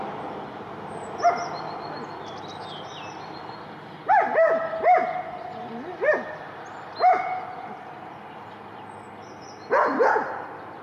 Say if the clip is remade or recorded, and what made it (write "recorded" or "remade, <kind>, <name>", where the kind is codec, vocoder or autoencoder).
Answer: recorded